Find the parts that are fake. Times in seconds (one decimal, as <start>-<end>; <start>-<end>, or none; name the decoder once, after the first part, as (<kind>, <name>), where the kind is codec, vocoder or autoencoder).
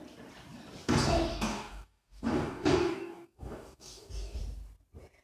1.3-4.4 (codec, DAC)